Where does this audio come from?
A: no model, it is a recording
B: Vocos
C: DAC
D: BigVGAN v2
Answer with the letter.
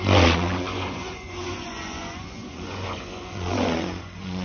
B